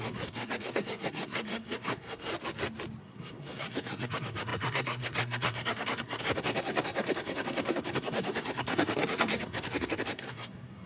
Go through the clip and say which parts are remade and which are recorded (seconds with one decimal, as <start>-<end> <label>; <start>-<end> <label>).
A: 0.0-2.3 remade; 2.3-3.0 recorded; 3.0-10.9 remade